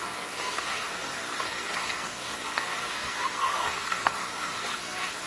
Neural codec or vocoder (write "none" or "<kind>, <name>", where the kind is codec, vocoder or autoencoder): codec, SNAC